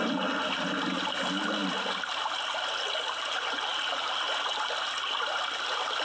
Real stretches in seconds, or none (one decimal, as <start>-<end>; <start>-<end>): 0.0-6.0